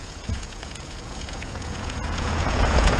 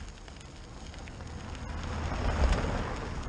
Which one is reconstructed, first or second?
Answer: first